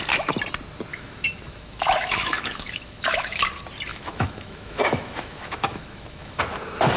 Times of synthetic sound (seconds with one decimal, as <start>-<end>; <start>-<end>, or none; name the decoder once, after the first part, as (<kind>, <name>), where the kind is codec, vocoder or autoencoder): 0.9-3.4 (autoencoder, DAC-VAE); 3.9-6.4